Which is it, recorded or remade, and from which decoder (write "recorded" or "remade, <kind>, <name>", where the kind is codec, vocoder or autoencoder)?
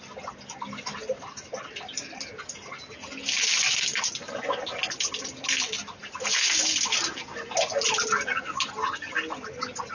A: recorded